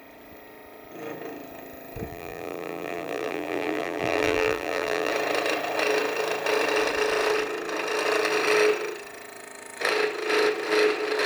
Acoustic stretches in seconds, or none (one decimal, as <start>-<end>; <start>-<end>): 0.0-2.1; 5.1-11.3